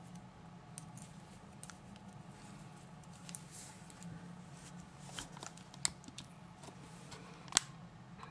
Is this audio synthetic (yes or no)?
no